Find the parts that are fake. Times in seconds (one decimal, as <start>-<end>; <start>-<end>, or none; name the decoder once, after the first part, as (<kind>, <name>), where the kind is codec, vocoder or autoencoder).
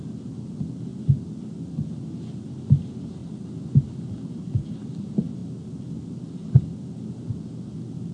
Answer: none